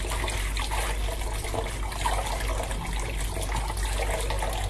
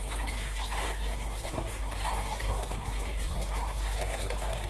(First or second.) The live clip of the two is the first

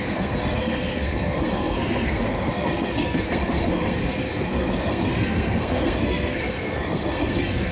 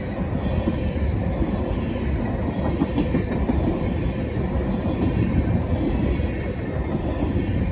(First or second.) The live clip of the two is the second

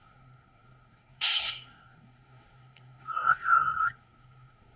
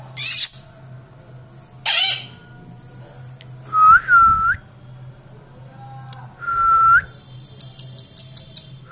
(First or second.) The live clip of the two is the second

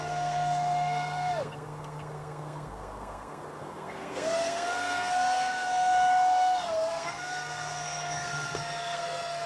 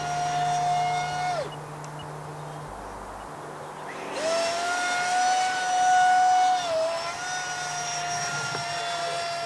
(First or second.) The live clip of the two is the second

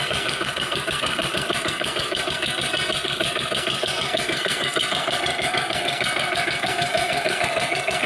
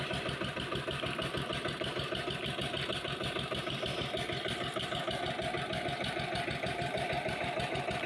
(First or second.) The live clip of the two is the second